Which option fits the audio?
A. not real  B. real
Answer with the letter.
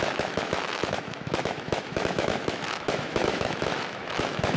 A